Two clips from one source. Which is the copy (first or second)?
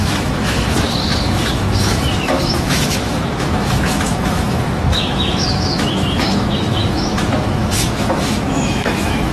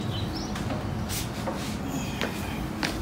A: first